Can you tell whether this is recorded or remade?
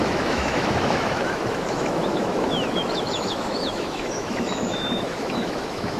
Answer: remade